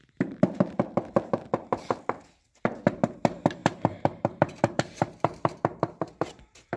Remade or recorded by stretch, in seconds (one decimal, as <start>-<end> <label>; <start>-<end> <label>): 0.0-3.6 recorded; 3.6-6.8 remade

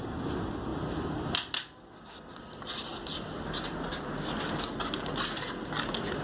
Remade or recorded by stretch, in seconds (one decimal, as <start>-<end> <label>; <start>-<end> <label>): 0.0-6.2 recorded

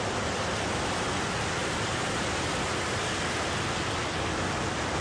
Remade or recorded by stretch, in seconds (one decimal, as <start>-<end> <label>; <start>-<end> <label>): 0.0-5.0 recorded